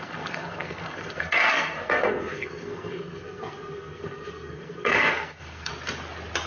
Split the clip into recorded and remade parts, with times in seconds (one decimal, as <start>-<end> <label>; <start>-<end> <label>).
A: 0.0-5.7 remade; 5.7-6.5 recorded

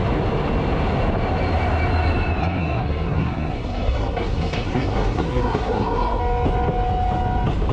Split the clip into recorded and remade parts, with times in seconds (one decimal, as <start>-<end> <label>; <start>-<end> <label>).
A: 0.0-2.4 recorded; 2.4-6.2 remade; 6.2-7.7 recorded

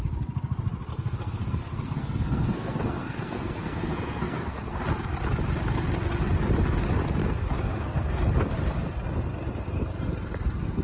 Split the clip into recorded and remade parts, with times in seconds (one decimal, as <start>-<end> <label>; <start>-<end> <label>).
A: 0.0-0.9 recorded; 0.9-4.8 remade; 4.8-7.2 recorded; 7.2-8.2 remade; 8.2-10.8 recorded

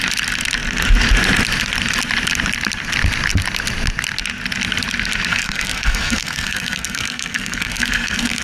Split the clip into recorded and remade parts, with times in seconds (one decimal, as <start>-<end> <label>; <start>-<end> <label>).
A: 0.0-5.3 recorded; 5.3-8.4 remade